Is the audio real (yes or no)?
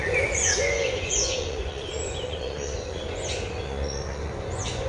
no